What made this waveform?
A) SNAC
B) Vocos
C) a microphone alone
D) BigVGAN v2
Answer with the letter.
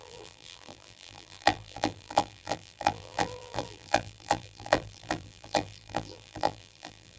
D